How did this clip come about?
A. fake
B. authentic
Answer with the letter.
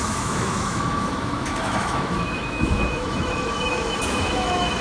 A